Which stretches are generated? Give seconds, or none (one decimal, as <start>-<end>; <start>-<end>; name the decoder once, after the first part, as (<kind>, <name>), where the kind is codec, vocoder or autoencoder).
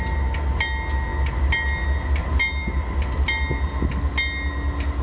none